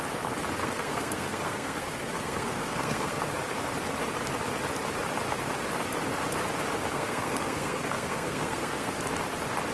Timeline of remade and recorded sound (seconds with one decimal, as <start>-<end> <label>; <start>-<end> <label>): 0.0-0.6 recorded; 0.6-3.2 remade; 3.2-6.9 recorded; 6.9-9.0 remade; 9.0-9.7 recorded